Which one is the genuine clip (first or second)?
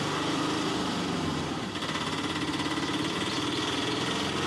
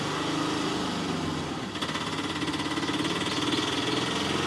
second